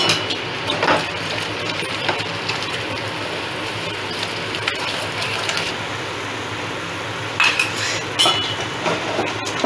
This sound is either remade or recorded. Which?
recorded